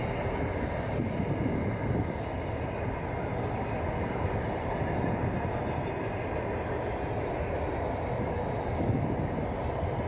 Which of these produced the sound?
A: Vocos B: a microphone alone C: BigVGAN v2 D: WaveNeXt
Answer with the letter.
B